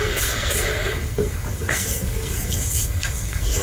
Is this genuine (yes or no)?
no